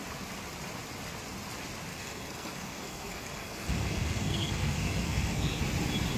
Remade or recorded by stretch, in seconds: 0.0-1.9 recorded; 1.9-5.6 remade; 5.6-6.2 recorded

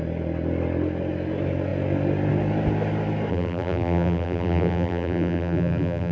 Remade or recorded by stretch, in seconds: 0.0-3.3 recorded; 3.3-6.1 remade

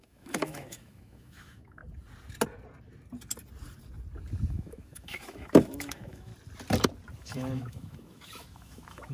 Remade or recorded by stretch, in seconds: 0.0-1.8 remade; 1.8-4.5 recorded; 4.5-6.3 remade; 6.3-7.2 recorded; 7.2-9.1 remade